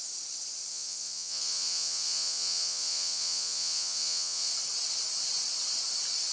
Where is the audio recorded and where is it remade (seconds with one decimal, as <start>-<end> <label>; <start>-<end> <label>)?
0.0-0.7 recorded; 0.7-4.5 remade; 4.5-6.3 recorded